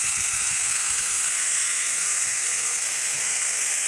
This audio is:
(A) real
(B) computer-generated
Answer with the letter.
B